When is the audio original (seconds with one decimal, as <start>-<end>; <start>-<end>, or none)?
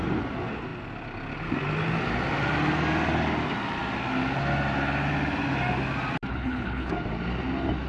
0.0-6.3; 6.9-7.9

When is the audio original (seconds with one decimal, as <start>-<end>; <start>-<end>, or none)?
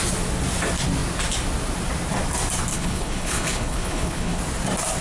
0.0-2.7; 4.4-5.0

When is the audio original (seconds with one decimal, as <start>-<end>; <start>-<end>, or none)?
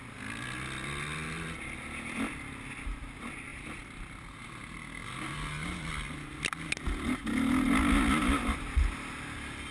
0.0-9.7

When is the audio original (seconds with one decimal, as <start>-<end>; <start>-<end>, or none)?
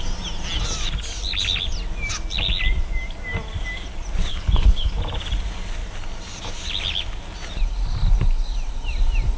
0.0-4.3; 4.9-9.4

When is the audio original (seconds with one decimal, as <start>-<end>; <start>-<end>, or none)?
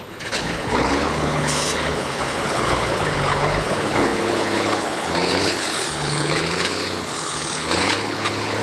none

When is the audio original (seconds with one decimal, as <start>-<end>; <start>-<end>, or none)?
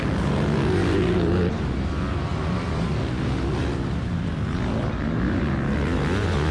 0.0-6.5